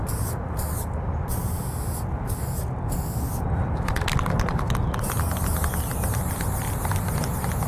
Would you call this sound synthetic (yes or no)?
no